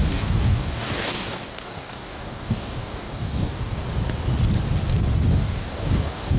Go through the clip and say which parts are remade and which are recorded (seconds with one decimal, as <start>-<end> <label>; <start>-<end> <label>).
0.0-3.8 remade; 3.8-5.3 recorded; 5.3-6.4 remade